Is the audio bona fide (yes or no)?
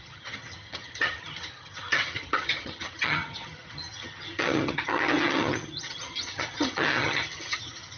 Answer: no